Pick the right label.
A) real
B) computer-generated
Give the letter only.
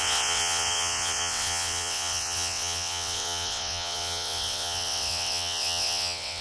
B